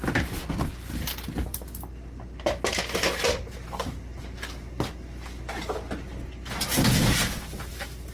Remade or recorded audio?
recorded